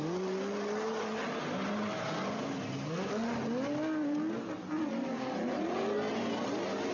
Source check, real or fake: real